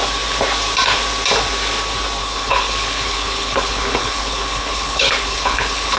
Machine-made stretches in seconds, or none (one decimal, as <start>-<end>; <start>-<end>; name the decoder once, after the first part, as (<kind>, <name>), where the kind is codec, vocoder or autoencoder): 2.2-6.0 (codec, HILCodec)